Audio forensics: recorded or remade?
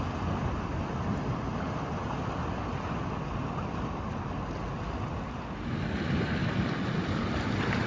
recorded